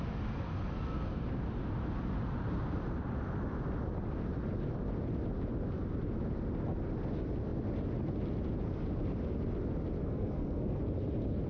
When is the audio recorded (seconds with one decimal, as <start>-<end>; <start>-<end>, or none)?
0.0-10.0; 10.8-11.5

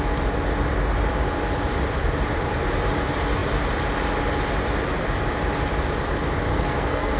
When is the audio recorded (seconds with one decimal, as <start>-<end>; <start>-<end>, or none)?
0.0-6.5

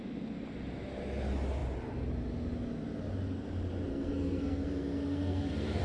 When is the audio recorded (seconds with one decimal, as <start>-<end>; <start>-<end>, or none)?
0.0-3.9

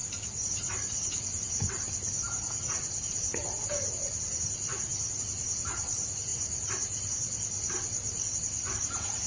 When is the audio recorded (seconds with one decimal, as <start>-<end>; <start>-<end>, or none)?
0.0-9.3